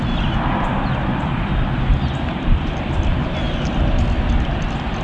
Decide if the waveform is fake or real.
real